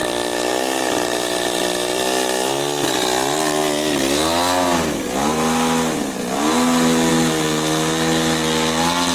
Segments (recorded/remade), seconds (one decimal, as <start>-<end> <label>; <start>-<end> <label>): 0.0-2.0 remade; 2.0-9.1 recorded